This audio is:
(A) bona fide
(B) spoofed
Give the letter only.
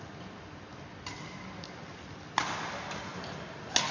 A